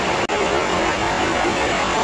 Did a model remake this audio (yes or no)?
no